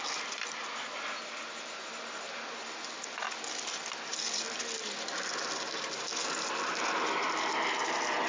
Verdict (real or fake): real